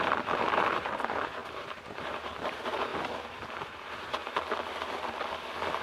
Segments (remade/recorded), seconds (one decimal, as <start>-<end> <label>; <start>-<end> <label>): 0.0-2.9 remade; 2.9-3.5 recorded; 3.5-4.2 remade; 4.2-5.8 recorded